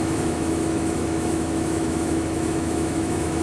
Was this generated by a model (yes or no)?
yes